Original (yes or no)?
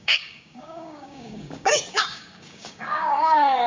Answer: no